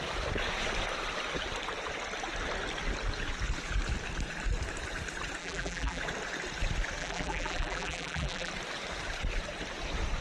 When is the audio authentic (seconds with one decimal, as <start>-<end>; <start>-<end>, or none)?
0.0-5.4; 6.0-7.0; 8.5-10.2